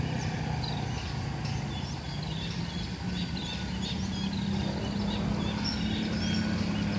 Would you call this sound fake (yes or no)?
no